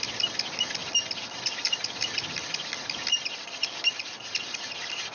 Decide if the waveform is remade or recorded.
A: recorded